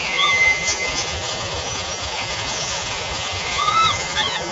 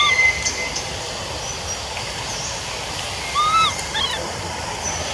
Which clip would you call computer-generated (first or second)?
first